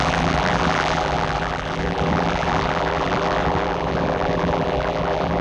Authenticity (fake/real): fake